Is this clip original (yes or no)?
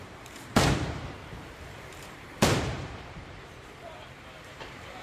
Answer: no